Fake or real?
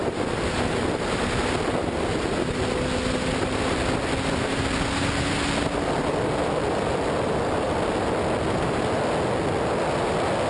real